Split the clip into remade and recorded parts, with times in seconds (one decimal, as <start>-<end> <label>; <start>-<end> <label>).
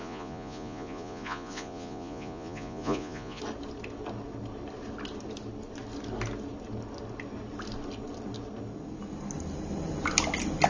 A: 0.0-3.4 remade; 3.4-10.7 recorded